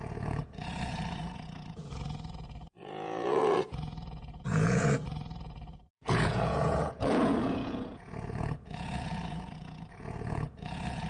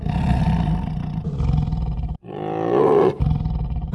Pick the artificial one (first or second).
first